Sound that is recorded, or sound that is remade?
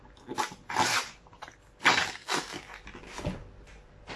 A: recorded